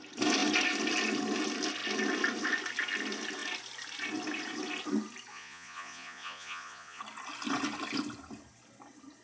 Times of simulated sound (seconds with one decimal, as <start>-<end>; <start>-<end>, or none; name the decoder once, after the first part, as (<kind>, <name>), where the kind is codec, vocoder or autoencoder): 5.3-7.0 (vocoder, Vocos)